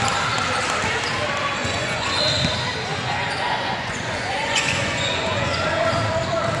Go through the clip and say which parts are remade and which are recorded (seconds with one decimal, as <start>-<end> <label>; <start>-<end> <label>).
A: 0.0-1.6 recorded; 1.6-2.2 remade; 2.2-2.9 recorded; 2.9-5.6 remade; 5.6-6.6 recorded